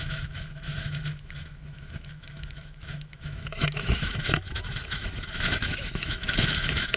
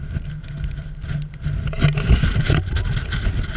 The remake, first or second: first